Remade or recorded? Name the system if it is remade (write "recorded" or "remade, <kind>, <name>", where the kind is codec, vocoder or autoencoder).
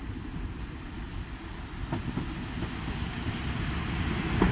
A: recorded